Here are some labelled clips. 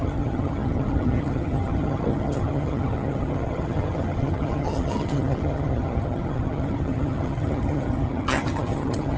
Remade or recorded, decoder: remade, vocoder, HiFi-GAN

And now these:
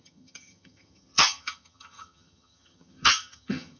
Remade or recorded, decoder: remade, vocoder, HiFi-GAN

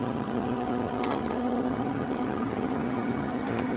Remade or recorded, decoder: remade, vocoder, HiFi-GAN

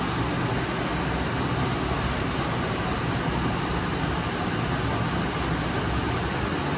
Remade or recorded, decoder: recorded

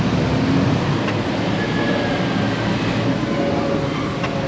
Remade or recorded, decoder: recorded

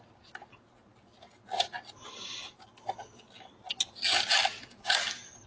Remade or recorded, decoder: recorded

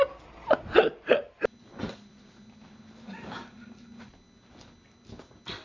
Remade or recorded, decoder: recorded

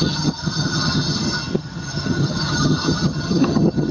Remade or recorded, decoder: remade, vocoder, HiFi-GAN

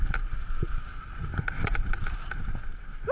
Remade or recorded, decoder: recorded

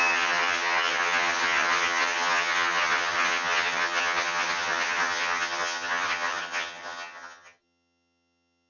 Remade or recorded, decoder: remade, vocoder, HiFi-GAN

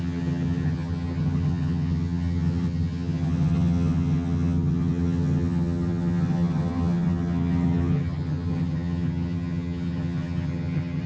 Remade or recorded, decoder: remade, vocoder, HiFi-GAN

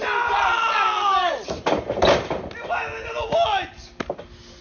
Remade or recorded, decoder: recorded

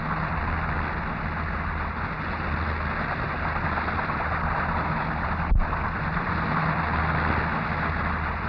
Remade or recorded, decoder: recorded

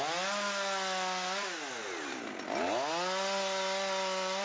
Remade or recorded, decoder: recorded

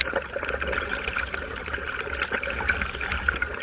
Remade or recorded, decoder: recorded